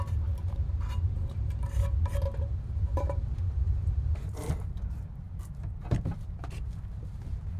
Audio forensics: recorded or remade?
remade